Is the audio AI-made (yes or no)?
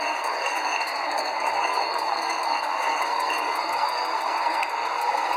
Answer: yes